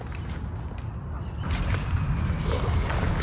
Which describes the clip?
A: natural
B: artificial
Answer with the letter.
A